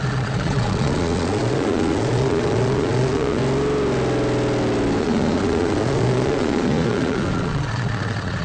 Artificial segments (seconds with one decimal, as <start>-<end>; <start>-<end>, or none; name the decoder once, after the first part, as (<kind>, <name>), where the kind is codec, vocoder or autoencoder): 0.0-3.4 (vocoder, Vocos); 5.0-8.4